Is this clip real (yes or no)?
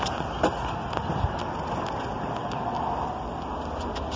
yes